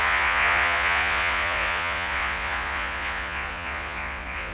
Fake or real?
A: fake